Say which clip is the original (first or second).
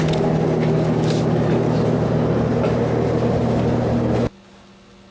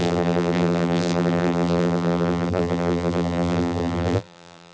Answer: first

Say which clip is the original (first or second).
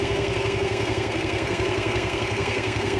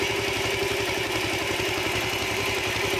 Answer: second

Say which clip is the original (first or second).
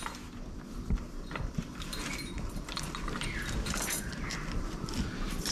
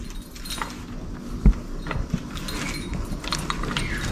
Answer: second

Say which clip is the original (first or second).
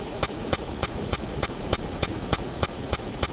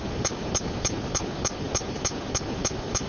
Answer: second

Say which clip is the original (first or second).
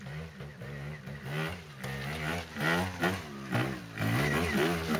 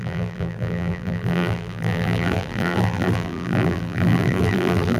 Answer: first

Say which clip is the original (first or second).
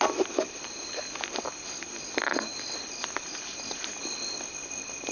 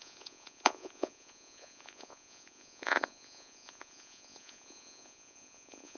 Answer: first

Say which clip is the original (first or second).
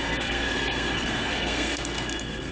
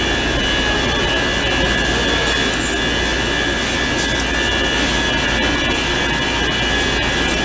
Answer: second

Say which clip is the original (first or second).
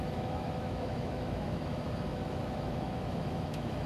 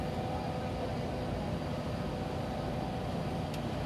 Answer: second